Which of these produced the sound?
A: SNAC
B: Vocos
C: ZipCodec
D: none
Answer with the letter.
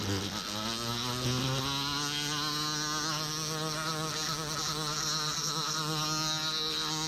D